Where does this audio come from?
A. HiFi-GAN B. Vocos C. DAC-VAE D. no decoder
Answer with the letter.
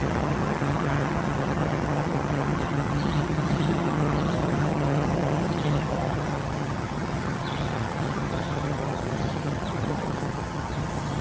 A